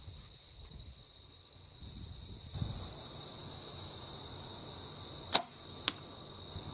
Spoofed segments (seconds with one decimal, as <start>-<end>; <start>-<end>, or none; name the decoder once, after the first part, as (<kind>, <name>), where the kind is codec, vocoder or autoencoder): 3.4-4.1 (autoencoder, DAC-VAE)

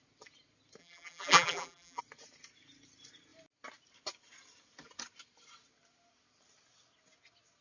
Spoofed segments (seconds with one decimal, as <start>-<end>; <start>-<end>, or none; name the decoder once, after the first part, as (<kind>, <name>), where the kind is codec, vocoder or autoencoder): 0.8-2.0 (vocoder, BigVGAN v2)

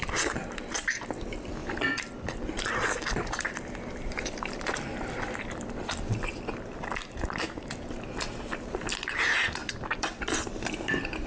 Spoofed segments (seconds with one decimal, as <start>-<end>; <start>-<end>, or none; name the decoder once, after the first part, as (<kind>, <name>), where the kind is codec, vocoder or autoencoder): 1.6-6.8 (vocoder, BigVGAN v2); 9.6-10.2

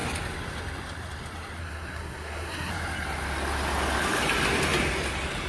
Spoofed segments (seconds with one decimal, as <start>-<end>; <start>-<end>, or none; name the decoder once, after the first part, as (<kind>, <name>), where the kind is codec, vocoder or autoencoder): 1.6-2.7 (codec, SNAC)

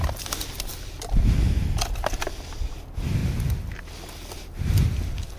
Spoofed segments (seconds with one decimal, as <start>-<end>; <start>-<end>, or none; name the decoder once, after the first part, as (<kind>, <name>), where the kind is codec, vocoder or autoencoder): none